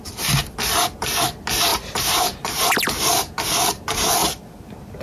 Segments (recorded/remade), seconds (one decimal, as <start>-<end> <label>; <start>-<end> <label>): 0.0-1.7 recorded; 1.7-2.7 remade; 2.7-4.2 recorded; 4.2-5.0 remade